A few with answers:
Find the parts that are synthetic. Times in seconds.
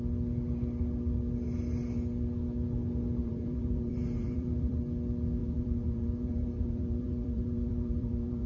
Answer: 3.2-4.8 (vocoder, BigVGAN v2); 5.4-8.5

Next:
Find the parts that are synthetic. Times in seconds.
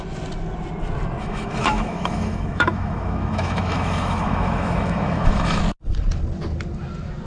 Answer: 1.2-5.6 (autoencoder, DAC-VAE)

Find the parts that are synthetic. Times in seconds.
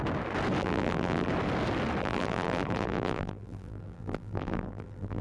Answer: 0.6-1.3 (vocoder, BigVGAN v2); 2.0-5.2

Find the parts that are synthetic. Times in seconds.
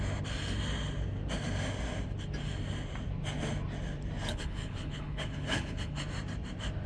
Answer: 4.3-6.0 (codec, HILCodec)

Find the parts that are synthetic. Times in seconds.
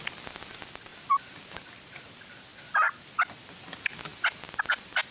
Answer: 0.9-2.1 (vocoder, BigVGAN v2)